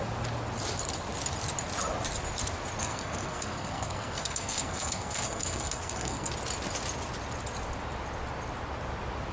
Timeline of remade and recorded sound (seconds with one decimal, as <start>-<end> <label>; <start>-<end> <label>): 0.0-2.8 recorded; 2.8-6.3 remade; 6.3-9.3 recorded